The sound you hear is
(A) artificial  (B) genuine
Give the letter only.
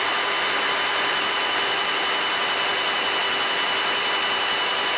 B